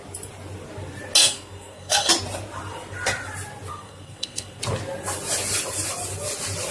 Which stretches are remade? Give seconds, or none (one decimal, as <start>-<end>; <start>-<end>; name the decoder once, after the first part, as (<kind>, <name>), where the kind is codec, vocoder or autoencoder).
1.2-2.1 (codec, SNAC); 3.7-4.6